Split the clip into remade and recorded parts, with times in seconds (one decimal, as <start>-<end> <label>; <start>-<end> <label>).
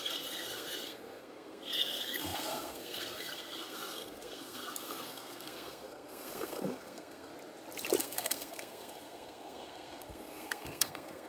0.0-7.3 remade; 7.3-8.0 recorded; 8.0-11.3 remade